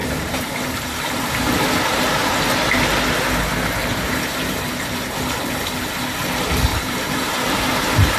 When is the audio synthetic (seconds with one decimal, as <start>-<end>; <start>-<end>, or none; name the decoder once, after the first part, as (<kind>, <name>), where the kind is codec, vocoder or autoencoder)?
0.0-2.3 (vocoder, BigVGAN v2); 3.8-5.2; 6.7-8.2